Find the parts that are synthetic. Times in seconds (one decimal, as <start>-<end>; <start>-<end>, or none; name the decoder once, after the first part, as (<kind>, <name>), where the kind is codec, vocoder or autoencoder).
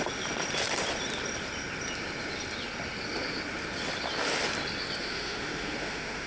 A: 5.0-6.3 (autoencoder, DAC-VAE)